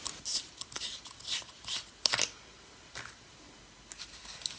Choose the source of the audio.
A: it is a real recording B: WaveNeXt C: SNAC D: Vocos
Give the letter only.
A